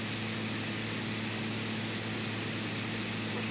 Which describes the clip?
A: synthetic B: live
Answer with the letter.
B